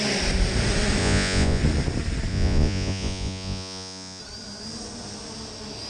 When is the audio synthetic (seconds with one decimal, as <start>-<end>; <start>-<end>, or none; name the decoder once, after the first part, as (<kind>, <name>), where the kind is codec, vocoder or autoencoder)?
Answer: 1.0-1.6 (vocoder, Vocos); 2.3-4.2